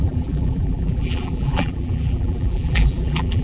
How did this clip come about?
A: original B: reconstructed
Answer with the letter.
B